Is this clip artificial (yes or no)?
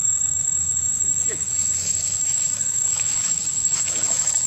yes